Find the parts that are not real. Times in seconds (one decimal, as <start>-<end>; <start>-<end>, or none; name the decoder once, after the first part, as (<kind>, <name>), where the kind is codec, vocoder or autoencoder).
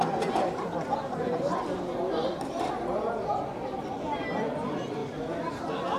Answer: 2.2-2.7 (vocoder, BigVGAN v2)